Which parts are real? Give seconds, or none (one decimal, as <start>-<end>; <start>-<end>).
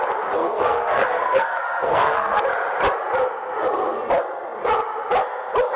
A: 0.0-0.4; 2.4-5.8